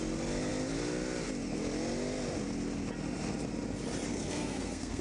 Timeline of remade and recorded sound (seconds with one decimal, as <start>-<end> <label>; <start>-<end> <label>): 0.0-4.1 recorded; 4.1-5.0 remade